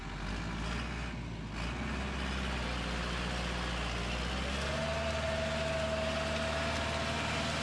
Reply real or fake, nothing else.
real